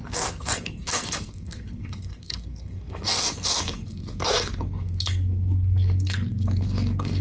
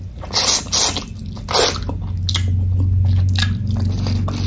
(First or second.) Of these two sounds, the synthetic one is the first